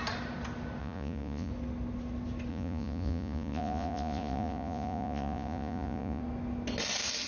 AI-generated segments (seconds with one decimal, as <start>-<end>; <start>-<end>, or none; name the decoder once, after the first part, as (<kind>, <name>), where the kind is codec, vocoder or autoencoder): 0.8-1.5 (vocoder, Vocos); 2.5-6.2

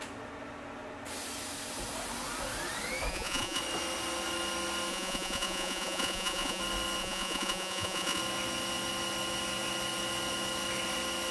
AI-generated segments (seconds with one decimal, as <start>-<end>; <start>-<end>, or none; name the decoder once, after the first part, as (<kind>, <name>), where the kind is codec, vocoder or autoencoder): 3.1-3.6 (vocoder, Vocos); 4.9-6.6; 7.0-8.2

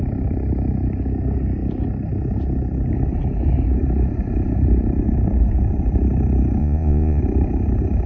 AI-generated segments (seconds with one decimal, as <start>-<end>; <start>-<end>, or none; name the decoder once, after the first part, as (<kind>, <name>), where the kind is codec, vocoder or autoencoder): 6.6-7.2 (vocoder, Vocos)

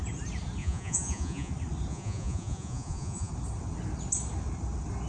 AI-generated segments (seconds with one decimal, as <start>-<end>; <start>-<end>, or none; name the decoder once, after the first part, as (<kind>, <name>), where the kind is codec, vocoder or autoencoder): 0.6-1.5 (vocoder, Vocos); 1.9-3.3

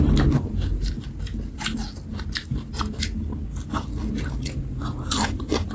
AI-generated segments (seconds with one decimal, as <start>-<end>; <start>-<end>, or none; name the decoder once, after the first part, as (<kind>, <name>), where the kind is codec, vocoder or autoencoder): none

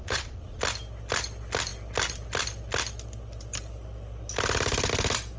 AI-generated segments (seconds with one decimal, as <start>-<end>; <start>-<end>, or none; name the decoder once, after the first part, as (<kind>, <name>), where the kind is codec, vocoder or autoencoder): 0.0-0.6 (vocoder, Vocos)